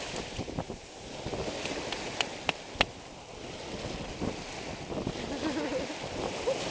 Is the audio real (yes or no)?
yes